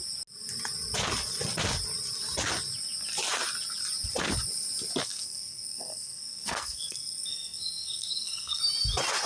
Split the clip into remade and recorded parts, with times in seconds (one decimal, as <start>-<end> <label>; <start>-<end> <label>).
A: 0.0-5.0 recorded; 5.0-8.6 remade; 8.6-9.3 recorded